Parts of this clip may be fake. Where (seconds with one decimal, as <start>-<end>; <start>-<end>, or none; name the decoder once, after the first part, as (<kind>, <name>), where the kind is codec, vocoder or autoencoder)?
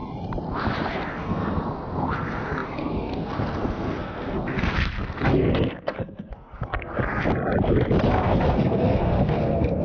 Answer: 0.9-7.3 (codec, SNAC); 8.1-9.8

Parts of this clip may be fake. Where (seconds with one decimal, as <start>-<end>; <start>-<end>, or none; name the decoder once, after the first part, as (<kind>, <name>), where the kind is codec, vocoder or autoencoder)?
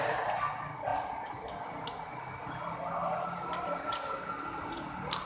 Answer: none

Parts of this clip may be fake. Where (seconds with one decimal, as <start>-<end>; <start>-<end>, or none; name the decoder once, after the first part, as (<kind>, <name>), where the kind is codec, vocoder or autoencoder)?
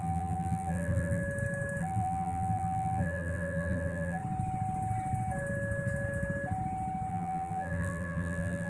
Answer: 0.0-1.2 (vocoder, BigVGAN v2); 1.8-4.2; 7.1-8.7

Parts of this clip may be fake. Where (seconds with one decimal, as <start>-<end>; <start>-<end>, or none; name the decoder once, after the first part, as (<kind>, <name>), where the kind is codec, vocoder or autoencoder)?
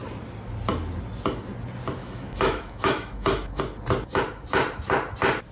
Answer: 2.0-3.6 (autoencoder, DAC-VAE)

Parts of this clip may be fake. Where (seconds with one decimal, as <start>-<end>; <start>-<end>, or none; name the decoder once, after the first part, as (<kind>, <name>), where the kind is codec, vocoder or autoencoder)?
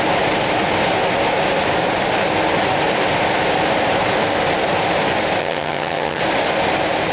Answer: 5.4-6.2 (vocoder, HiFi-GAN)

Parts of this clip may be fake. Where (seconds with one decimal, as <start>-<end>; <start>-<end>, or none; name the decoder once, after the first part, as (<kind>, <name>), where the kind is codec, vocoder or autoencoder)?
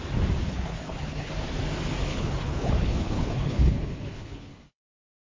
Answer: 0.4-1.3 (codec, HILCodec); 2.1-4.8